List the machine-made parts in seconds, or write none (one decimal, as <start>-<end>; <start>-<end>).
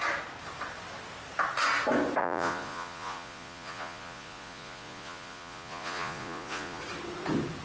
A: 2.2-6.8